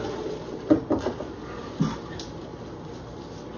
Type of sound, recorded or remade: recorded